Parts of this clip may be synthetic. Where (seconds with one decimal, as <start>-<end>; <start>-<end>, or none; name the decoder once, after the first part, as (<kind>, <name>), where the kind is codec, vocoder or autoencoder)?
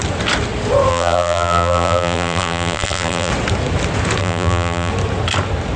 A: 0.9-3.3 (vocoder, BigVGAN v2); 4.2-4.9